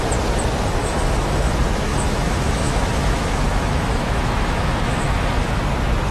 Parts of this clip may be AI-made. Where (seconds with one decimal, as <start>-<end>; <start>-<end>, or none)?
0.8-1.5; 1.9-5.6